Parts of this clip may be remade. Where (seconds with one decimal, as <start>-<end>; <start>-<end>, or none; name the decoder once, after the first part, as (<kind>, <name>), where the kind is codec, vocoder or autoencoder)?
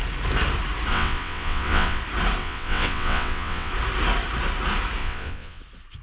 0.9-2.0 (vocoder, WaveNeXt); 2.4-3.7; 5.0-5.6